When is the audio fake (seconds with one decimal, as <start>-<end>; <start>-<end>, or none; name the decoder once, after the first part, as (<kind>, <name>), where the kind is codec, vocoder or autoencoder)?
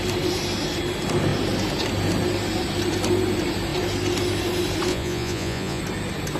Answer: 4.9-5.8 (vocoder, Vocos)